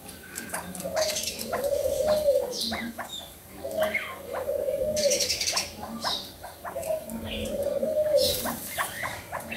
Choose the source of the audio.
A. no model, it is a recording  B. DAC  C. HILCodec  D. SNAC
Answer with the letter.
B